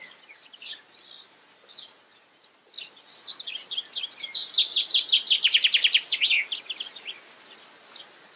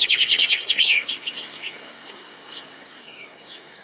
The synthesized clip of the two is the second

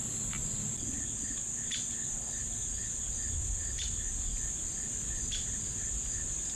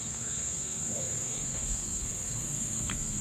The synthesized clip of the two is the second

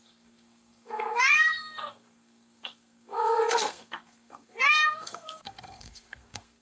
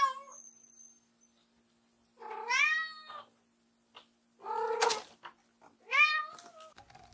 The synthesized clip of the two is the first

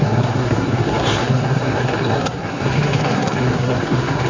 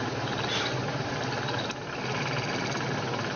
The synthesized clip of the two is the first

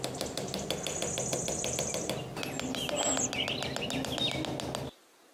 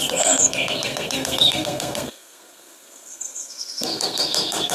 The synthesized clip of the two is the second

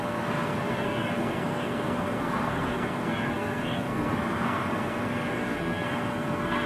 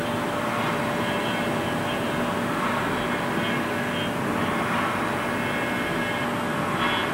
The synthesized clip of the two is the first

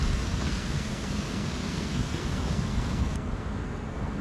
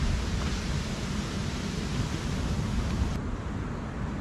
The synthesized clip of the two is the first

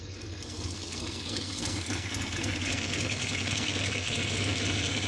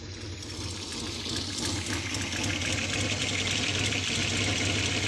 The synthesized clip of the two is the first